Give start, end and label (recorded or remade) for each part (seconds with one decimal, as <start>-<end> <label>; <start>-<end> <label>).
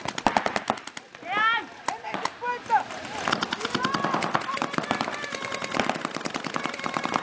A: 0.0-7.2 recorded